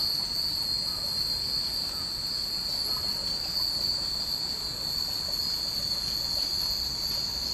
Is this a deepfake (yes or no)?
no